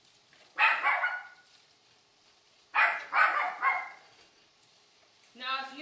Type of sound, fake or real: real